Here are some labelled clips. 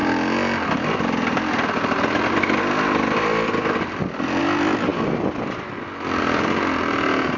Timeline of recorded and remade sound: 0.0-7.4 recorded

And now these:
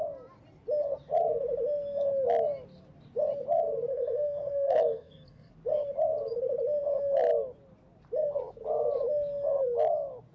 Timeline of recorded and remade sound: 0.0-3.9 recorded; 3.9-5.5 remade; 5.5-10.3 recorded